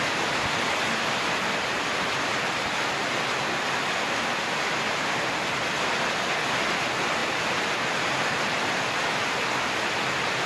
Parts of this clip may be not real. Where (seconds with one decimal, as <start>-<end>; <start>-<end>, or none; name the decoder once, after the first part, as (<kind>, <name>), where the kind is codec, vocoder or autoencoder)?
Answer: none